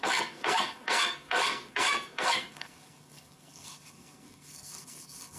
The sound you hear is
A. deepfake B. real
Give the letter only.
A